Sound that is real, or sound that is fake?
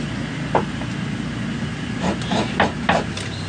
real